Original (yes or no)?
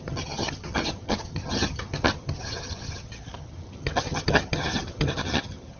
no